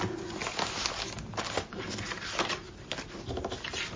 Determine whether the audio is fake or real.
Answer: real